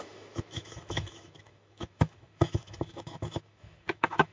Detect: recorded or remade remade